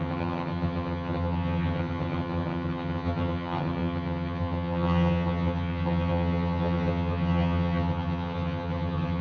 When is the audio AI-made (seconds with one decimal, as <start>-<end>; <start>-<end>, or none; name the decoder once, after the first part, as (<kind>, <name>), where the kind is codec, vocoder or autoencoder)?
0.0-9.2 (vocoder, HiFi-GAN)